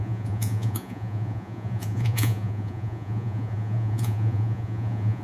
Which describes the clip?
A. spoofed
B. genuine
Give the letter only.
A